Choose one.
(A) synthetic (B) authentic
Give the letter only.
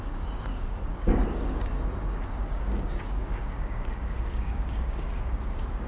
A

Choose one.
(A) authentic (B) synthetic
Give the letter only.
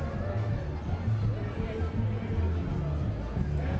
A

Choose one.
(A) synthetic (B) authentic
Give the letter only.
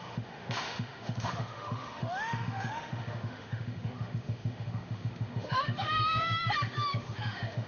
A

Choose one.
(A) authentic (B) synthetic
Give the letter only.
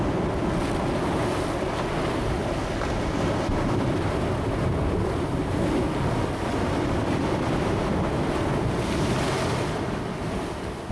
A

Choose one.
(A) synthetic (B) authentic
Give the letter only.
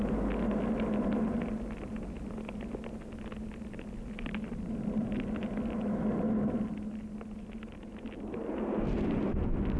B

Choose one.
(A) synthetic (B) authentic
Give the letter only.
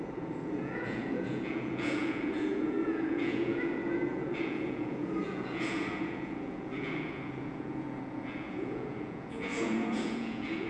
A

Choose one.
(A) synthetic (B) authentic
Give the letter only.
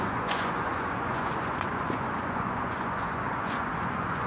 A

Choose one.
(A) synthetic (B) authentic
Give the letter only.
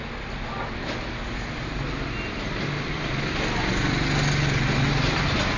B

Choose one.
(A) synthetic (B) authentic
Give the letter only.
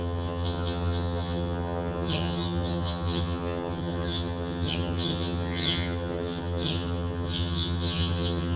A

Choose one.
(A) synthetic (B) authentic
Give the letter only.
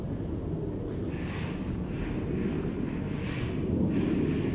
B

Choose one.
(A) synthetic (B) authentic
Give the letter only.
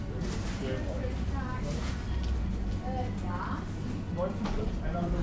B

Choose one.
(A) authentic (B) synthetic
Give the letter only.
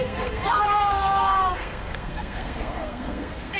B